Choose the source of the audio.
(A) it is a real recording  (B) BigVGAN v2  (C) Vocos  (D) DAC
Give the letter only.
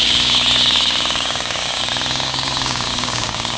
D